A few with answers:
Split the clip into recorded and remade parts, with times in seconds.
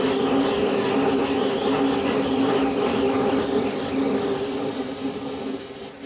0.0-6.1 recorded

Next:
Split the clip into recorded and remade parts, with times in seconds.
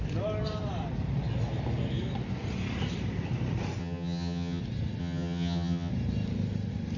0.0-3.8 recorded; 3.8-4.6 remade; 4.6-5.0 recorded; 5.0-5.9 remade; 5.9-7.0 recorded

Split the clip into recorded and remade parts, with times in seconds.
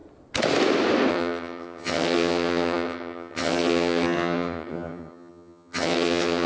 0.0-1.1 recorded; 1.1-6.5 remade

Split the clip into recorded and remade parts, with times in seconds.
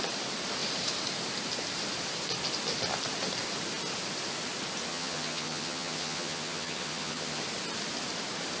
0.0-4.9 recorded; 4.9-7.4 remade; 7.4-8.6 recorded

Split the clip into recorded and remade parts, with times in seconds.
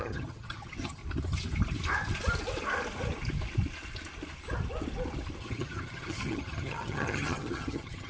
0.0-1.0 remade; 1.0-5.4 recorded; 5.4-8.1 remade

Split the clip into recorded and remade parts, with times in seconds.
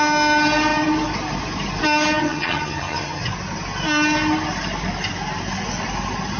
0.0-2.2 recorded; 2.2-3.2 remade; 3.2-6.4 recorded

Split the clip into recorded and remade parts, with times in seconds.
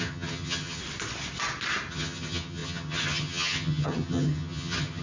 0.0-0.8 remade; 0.8-1.9 recorded; 1.9-5.0 remade